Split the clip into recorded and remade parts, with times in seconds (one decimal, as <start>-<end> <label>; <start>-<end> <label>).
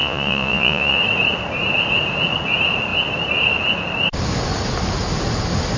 0.0-1.0 remade; 1.0-5.8 recorded